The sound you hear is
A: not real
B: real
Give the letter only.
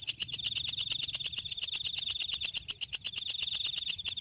B